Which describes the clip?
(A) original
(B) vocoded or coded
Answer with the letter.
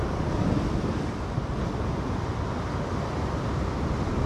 A